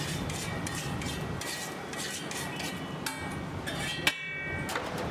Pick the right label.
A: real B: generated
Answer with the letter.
A